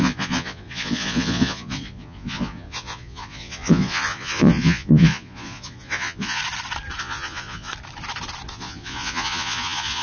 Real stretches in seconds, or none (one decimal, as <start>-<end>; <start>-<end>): 6.4-7.0; 7.7-8.5

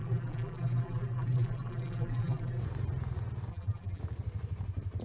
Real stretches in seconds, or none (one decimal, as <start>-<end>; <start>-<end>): 2.6-3.5; 4.0-5.0